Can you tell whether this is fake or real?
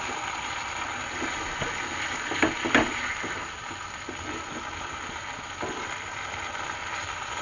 real